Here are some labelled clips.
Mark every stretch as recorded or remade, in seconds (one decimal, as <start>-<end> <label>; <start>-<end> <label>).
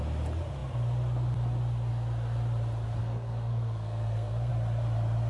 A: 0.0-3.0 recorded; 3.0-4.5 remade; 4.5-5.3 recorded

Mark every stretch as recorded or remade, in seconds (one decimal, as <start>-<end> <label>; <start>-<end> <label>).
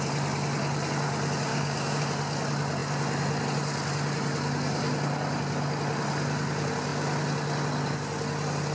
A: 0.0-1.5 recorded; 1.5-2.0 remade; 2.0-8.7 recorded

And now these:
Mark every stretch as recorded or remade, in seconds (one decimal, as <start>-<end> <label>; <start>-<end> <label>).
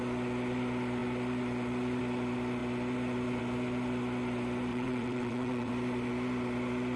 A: 0.0-4.7 recorded; 4.7-5.7 remade; 5.7-7.0 recorded